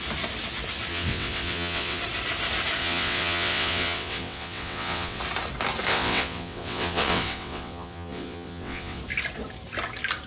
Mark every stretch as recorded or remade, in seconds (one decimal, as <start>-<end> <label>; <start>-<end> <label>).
0.0-0.9 recorded; 0.9-2.0 remade; 2.0-2.8 recorded; 2.8-5.2 remade; 5.2-5.9 recorded; 5.9-9.0 remade; 9.0-10.3 recorded